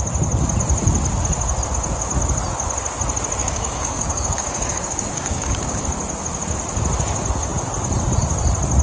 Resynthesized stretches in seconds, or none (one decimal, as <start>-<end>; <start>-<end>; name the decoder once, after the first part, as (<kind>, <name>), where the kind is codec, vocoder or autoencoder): 3.4-5.8 (codec, DAC)